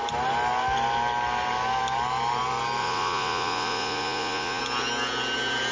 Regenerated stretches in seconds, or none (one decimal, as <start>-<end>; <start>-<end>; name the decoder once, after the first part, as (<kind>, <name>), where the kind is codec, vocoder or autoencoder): 2.8-4.6 (vocoder, Vocos)